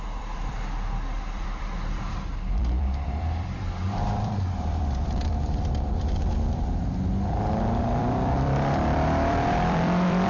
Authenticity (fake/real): fake